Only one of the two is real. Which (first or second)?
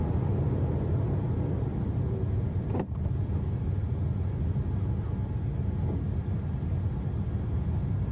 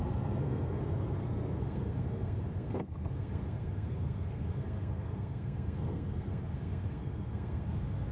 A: first